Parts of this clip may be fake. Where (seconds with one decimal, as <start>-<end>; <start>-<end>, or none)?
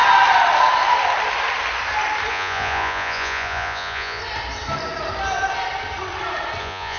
2.3-4.2; 6.6-7.0